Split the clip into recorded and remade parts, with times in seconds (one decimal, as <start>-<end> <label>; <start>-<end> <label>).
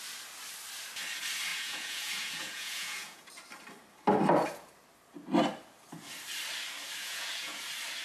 0.0-1.5 recorded; 1.5-3.3 remade; 3.3-7.0 recorded; 7.0-7.6 remade; 7.6-8.0 recorded